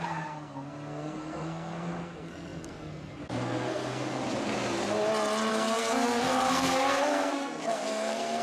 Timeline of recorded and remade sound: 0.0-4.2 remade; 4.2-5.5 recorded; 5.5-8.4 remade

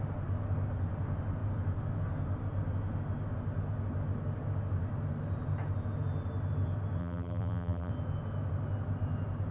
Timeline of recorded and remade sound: 0.0-7.0 recorded; 7.0-7.9 remade; 7.9-9.5 recorded

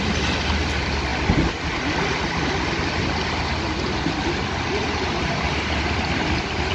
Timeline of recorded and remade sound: 0.0-6.7 recorded